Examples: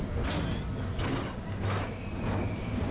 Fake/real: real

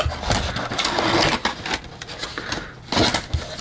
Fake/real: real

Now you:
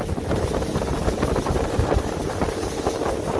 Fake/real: real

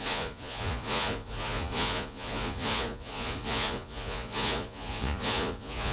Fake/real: fake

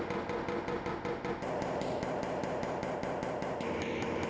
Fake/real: real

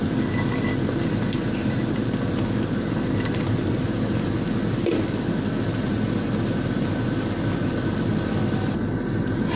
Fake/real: real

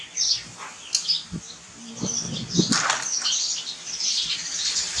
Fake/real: real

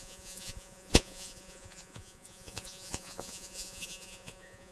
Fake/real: fake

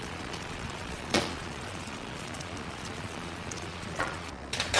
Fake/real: fake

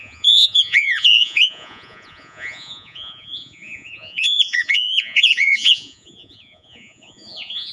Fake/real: fake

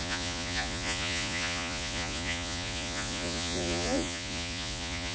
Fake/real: fake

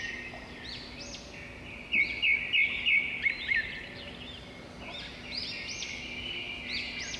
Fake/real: real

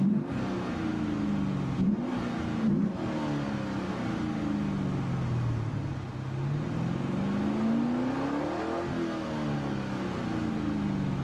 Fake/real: real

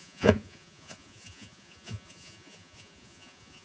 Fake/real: fake